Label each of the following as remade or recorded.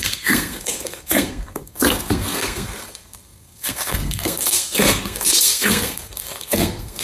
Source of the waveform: remade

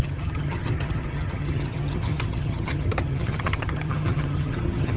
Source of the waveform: remade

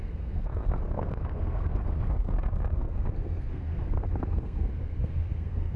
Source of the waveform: remade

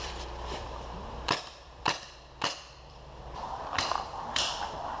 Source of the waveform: remade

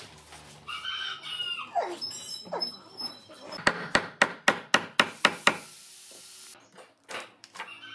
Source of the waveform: recorded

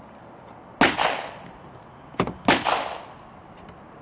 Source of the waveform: recorded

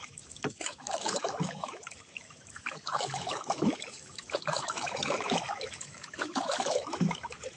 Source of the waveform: remade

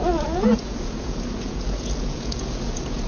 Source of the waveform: remade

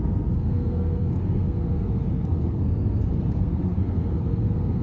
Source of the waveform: remade